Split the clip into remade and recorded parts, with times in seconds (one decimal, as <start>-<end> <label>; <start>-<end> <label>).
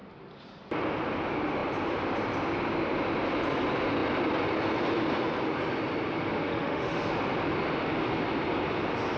0.0-6.5 recorded; 6.5-7.1 remade; 7.1-9.2 recorded